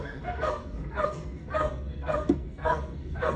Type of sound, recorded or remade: remade